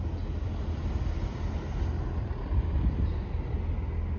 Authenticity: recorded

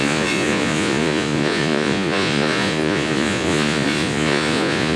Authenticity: remade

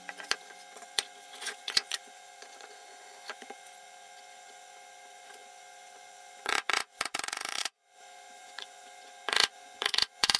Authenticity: remade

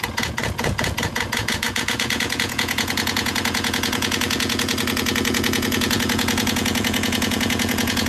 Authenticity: remade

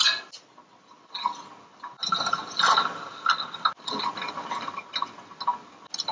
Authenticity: recorded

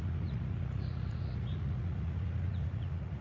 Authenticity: remade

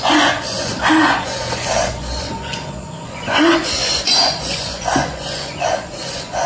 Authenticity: remade